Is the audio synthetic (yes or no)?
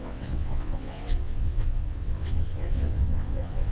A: yes